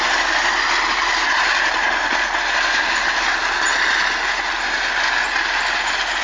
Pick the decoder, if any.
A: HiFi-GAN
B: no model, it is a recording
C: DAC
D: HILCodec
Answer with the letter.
B